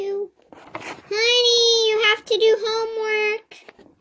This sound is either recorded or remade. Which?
recorded